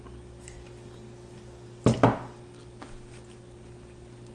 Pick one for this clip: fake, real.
real